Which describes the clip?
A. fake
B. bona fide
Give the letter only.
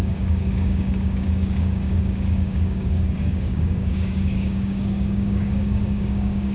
A